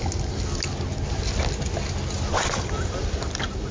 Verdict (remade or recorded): recorded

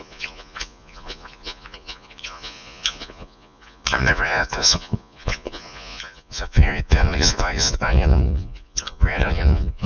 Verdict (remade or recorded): remade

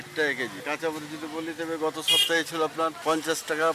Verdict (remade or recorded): recorded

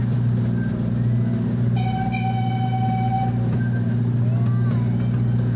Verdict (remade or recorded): recorded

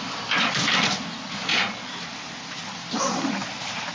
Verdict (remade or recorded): recorded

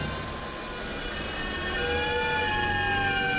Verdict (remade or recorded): recorded